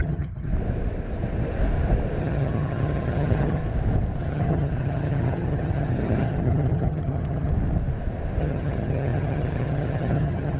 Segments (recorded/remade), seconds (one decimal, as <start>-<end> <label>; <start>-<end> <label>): 0.0-0.5 remade; 0.5-2.2 recorded; 2.2-3.6 remade; 3.6-4.2 recorded; 4.2-7.5 remade; 7.5-8.4 recorded; 8.4-10.6 remade